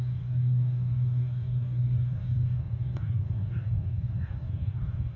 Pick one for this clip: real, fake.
fake